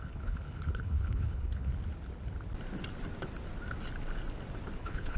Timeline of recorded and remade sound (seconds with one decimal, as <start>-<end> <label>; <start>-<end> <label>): 0.0-1.7 remade; 1.7-4.8 recorded; 4.8-5.2 remade